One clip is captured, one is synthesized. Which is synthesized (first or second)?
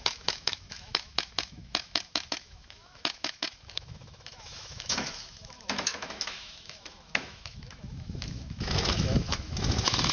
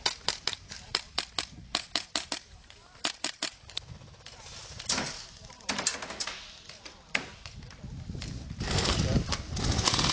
first